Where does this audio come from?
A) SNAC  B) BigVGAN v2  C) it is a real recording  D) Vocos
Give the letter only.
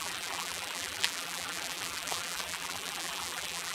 B